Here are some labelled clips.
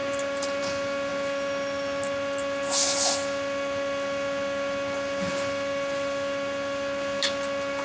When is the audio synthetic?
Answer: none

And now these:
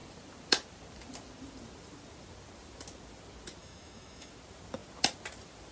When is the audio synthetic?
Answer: 3.6-4.3 (autoencoder, DAC-VAE)

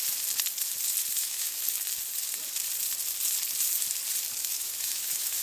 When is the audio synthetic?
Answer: 1.1-1.7 (autoencoder, DAC-VAE); 4.4-5.4